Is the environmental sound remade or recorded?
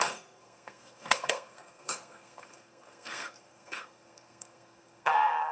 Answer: remade